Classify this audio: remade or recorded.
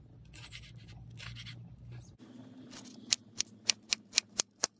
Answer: recorded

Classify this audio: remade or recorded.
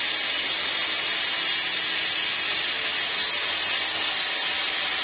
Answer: recorded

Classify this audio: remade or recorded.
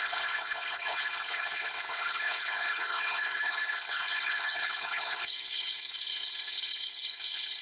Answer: remade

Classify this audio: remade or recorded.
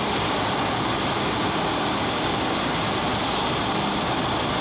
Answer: recorded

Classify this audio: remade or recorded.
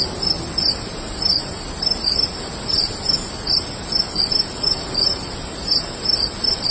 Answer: recorded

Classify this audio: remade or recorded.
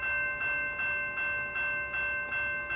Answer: recorded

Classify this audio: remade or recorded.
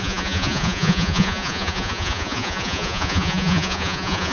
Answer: remade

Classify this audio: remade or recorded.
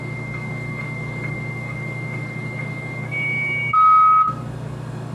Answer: remade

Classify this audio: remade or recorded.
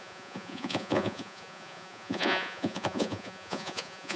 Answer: remade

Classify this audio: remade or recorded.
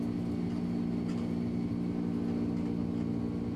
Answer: recorded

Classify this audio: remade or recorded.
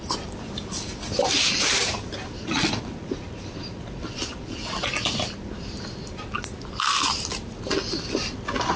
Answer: recorded